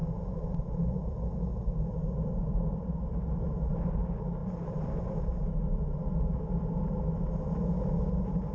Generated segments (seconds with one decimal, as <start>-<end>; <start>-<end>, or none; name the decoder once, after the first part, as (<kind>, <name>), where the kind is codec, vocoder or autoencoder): 0.0-1.2 (vocoder, BigVGAN v2); 4.4-5.4